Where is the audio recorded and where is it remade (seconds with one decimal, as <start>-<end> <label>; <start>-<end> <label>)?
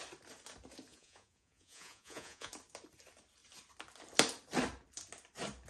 0.0-0.9 recorded; 0.9-2.5 remade; 2.5-5.7 recorded